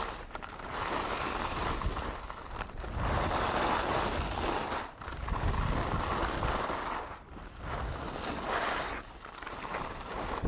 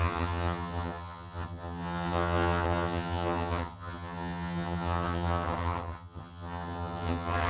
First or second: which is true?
first